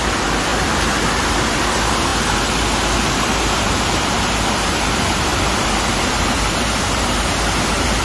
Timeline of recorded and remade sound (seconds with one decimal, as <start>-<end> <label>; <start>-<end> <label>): 0.0-0.5 remade; 0.5-1.1 recorded; 1.1-8.0 remade